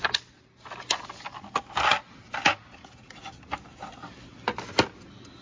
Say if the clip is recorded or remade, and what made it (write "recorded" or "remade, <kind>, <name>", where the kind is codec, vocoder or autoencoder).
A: recorded